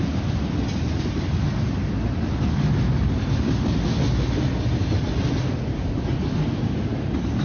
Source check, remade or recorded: recorded